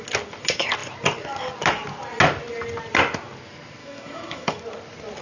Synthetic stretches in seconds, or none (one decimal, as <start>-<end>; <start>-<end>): 3.8-4.6